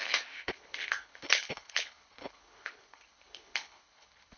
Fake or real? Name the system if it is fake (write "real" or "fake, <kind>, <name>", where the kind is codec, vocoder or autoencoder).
fake, codec, HILCodec